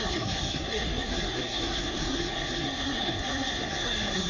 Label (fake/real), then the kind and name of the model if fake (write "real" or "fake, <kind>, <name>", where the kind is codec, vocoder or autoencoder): fake, codec, SNAC